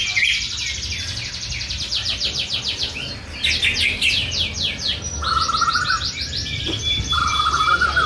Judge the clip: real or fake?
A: real